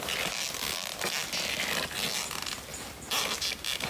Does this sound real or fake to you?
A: real